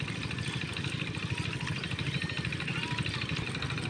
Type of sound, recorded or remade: recorded